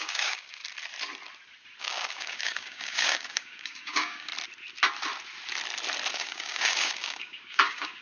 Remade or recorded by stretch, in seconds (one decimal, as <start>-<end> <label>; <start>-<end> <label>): 0.0-0.6 remade; 0.6-1.8 recorded; 1.8-4.3 remade; 4.3-6.1 recorded; 6.1-8.0 remade

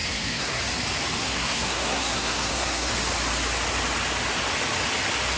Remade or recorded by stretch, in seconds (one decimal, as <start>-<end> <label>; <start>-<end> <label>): 0.0-0.6 remade; 0.6-1.2 recorded; 1.2-2.9 remade; 2.9-5.4 recorded

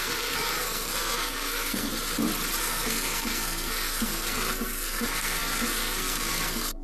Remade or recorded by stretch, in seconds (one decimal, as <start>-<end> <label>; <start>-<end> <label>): 0.0-1.9 remade; 1.9-2.6 recorded; 2.6-6.8 remade

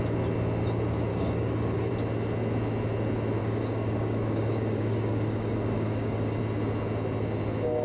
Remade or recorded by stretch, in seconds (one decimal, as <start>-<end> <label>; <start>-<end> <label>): 0.0-1.1 recorded; 1.1-1.9 remade; 1.9-3.4 recorded; 3.4-6.4 remade; 6.4-7.8 recorded